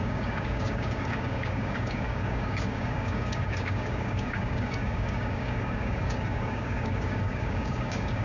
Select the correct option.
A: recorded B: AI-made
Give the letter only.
B